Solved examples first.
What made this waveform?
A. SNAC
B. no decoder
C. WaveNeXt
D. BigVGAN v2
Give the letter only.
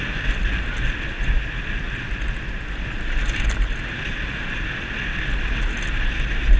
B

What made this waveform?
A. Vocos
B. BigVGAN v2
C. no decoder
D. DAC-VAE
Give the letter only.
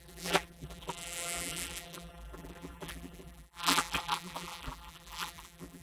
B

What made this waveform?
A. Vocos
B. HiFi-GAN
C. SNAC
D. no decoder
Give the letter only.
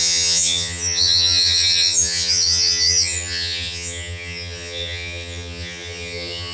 B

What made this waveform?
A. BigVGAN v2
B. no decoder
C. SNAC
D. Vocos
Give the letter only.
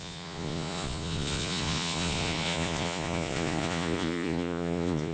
D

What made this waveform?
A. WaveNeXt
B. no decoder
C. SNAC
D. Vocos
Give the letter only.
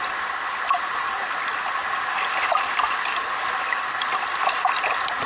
B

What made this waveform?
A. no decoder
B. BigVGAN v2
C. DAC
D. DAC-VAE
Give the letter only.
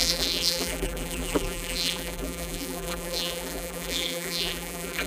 B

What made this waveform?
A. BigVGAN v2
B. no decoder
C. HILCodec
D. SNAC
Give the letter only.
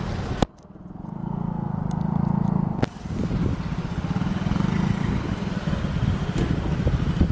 B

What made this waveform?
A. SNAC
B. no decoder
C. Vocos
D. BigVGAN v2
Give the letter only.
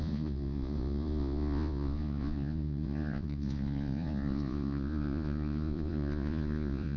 C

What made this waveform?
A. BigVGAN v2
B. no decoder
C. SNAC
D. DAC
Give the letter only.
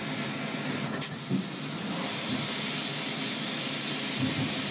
B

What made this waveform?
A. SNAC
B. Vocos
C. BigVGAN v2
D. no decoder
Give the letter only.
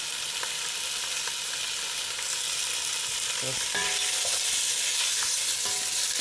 D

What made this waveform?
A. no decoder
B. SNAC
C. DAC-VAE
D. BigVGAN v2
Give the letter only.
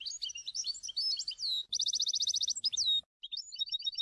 A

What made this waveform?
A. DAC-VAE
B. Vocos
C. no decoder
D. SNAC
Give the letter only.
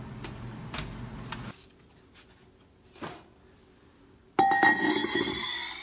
C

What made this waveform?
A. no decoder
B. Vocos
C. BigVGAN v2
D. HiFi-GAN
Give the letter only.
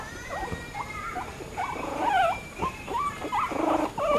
C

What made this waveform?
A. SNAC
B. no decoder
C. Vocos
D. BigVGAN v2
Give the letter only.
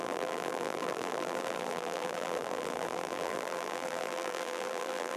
D